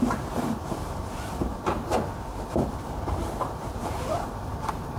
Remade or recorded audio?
remade